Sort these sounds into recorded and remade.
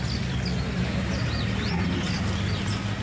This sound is recorded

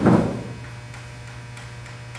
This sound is recorded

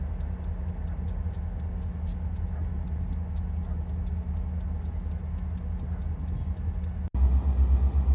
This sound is recorded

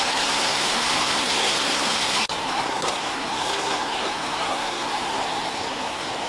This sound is remade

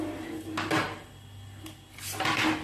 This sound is recorded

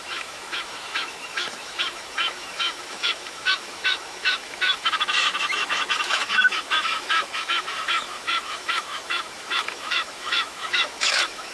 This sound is remade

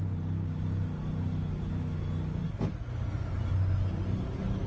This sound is recorded